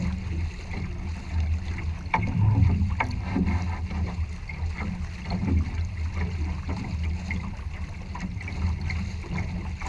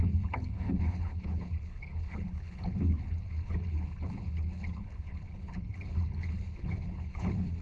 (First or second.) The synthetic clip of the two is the second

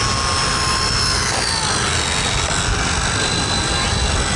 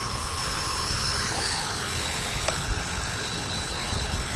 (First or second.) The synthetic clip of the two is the second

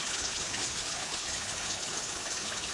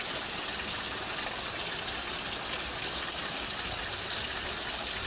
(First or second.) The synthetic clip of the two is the first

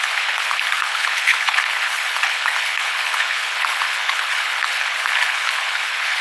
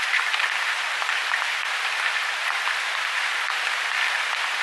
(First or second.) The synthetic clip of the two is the first